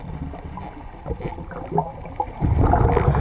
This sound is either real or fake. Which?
real